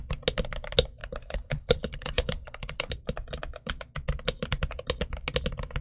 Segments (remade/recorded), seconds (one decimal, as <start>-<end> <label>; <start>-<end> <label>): 0.0-1.0 recorded; 1.0-2.9 remade; 2.9-5.8 recorded